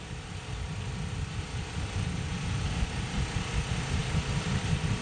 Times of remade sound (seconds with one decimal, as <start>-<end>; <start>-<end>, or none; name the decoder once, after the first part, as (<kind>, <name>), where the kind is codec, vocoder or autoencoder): none